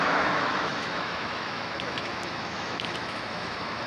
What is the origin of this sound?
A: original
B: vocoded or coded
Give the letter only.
B